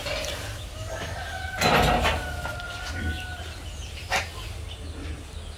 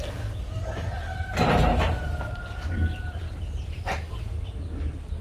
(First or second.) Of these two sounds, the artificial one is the second